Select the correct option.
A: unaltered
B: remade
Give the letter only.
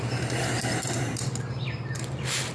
A